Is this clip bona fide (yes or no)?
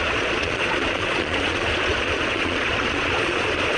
no